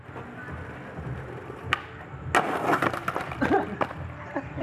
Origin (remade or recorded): recorded